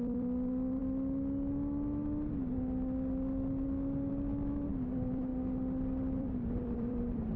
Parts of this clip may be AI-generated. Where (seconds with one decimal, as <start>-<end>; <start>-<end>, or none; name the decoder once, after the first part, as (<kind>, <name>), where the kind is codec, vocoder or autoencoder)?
0.0-0.8 (vocoder, BigVGAN v2); 4.1-5.3; 6.2-7.4